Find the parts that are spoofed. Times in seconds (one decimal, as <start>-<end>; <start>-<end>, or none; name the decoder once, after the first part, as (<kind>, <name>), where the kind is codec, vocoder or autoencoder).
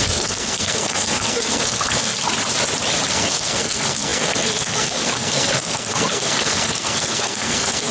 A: 0.0-2.1 (codec, SNAC); 3.1-7.9